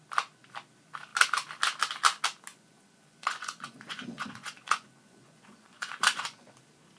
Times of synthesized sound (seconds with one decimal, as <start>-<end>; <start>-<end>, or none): 2.5-6.5

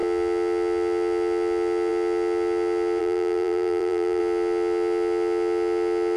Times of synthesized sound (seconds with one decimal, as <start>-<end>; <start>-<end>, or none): 3.0-4.2